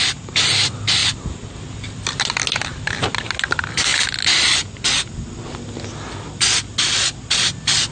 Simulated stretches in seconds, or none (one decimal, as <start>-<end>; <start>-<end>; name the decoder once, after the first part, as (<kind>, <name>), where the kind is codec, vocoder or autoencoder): none